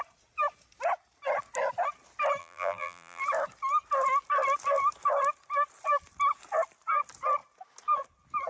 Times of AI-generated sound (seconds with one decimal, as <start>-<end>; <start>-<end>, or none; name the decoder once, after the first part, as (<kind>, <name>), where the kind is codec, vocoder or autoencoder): 2.4-3.2 (vocoder, BigVGAN v2)